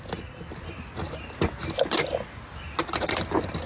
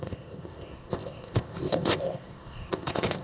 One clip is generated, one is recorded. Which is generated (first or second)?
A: second